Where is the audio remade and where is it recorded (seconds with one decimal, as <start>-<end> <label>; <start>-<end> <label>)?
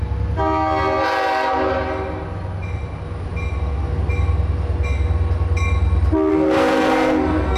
0.0-6.3 recorded; 6.3-7.6 remade